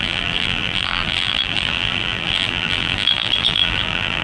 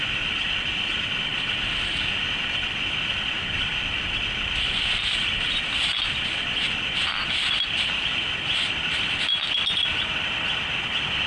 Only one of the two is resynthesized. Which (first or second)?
first